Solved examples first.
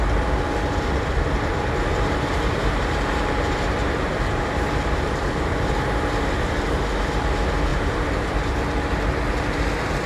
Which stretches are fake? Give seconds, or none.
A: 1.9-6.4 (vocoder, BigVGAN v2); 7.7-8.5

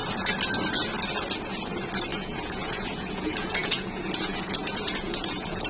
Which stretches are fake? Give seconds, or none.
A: 2.1-5.7 (vocoder, Vocos)

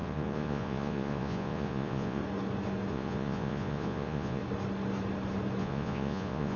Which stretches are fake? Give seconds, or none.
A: 0.0-2.2 (vocoder, Vocos); 2.9-4.4; 5.6-6.6